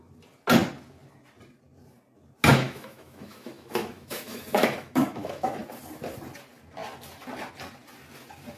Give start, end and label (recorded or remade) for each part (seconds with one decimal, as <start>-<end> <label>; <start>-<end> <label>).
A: 0.0-2.5 recorded; 2.5-5.6 remade; 5.6-8.6 recorded